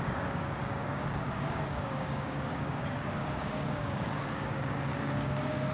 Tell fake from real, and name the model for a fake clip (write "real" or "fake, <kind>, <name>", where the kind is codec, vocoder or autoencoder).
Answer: fake, codec, DAC